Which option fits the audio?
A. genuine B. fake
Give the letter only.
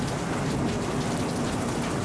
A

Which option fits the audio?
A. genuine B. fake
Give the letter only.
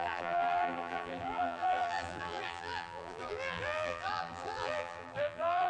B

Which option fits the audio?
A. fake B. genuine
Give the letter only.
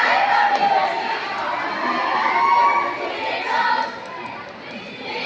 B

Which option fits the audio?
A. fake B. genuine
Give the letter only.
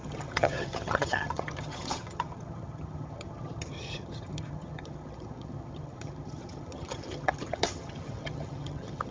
A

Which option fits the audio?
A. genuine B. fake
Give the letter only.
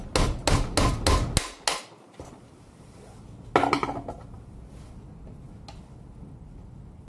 A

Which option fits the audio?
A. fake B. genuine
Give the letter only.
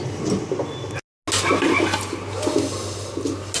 B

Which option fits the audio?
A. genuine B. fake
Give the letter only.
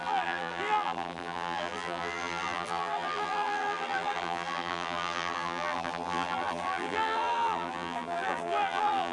B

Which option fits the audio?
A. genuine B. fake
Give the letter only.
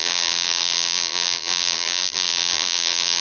B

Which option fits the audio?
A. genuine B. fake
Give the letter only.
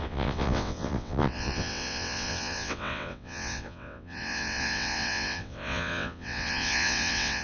B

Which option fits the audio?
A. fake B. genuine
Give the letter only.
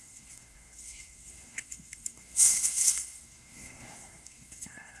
A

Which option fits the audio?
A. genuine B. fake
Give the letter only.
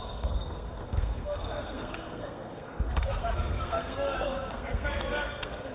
B